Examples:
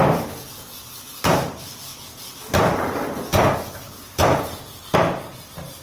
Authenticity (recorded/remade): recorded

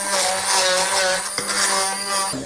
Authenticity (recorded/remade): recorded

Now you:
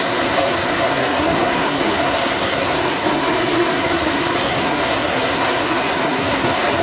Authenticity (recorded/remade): remade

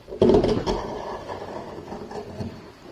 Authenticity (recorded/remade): remade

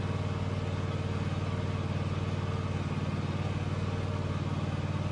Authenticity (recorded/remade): recorded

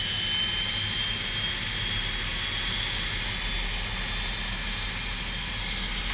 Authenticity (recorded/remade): recorded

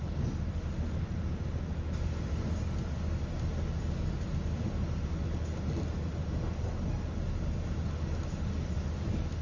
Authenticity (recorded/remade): recorded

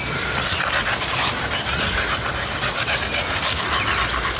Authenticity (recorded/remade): recorded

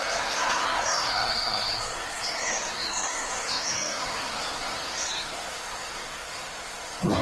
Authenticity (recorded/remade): remade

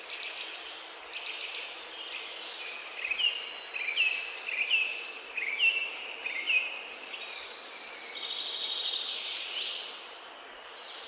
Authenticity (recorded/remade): remade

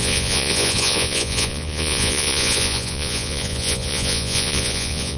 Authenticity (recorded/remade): remade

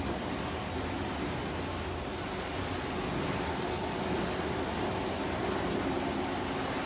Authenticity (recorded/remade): recorded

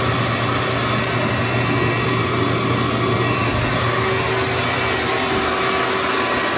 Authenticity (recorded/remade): recorded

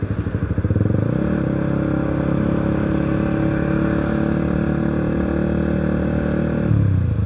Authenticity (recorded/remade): recorded